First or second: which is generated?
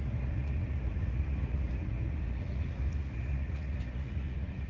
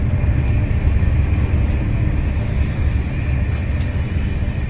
first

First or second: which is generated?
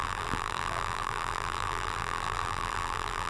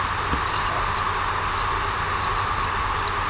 first